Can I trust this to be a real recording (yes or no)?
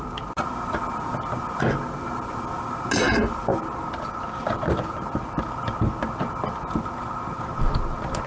yes